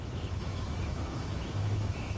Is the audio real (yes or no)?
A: no